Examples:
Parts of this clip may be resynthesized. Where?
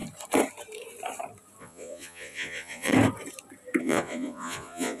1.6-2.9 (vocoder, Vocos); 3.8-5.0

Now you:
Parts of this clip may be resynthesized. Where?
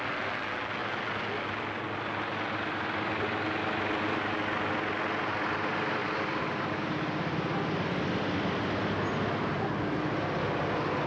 none